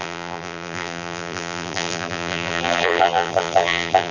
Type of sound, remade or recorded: remade